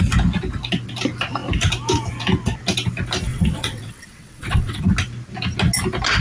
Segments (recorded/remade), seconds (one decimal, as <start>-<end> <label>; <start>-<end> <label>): 0.0-3.3 recorded; 3.3-4.8 remade; 4.8-6.2 recorded